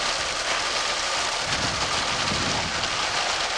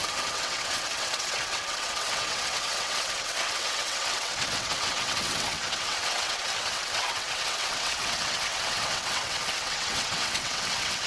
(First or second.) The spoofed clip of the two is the second